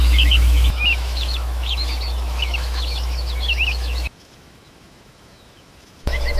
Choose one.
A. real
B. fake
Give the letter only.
B